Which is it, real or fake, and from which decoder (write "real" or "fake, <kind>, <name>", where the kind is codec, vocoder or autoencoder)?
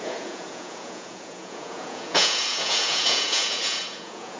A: fake, vocoder, Vocos